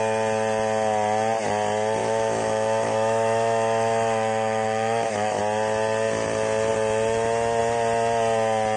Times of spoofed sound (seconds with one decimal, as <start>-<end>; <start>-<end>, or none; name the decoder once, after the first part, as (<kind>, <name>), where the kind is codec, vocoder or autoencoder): 2.0-5.4 (autoencoder, DAC-VAE)